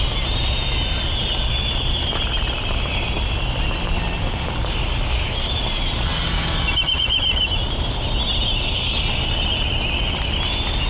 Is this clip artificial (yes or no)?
no